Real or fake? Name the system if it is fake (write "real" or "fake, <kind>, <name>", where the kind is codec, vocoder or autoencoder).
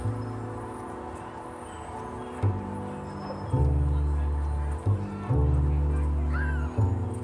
real